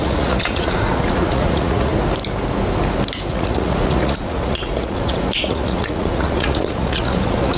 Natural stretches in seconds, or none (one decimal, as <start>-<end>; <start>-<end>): 1.9-3.3

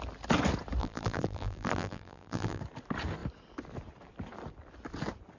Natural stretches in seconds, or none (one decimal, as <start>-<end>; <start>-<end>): 0.0-0.8; 2.6-5.4